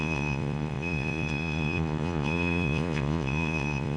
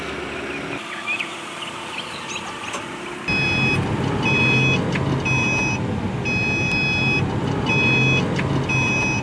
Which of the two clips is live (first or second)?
second